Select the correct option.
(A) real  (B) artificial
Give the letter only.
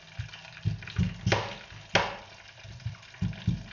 A